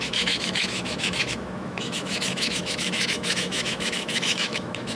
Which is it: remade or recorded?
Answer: remade